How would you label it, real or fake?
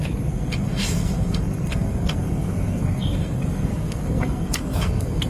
fake